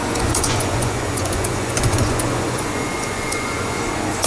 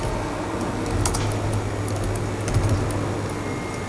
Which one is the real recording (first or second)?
second